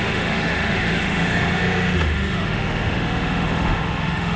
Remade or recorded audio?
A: remade